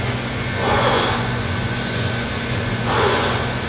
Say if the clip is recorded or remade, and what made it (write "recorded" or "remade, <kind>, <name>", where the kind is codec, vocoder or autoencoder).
remade, vocoder, Vocos